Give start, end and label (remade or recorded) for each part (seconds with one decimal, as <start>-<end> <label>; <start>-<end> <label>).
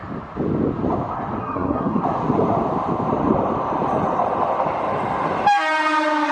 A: 0.0-1.4 recorded; 1.4-2.0 remade; 2.0-6.3 recorded